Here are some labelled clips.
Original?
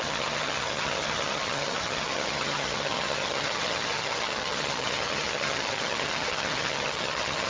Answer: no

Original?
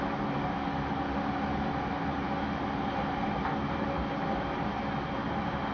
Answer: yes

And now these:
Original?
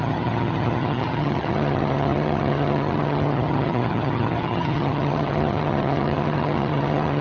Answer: no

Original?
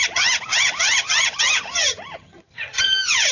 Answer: no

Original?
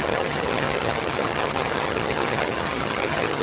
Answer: no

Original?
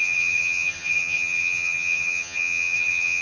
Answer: no